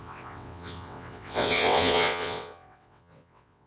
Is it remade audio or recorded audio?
remade